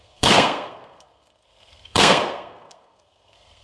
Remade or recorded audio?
remade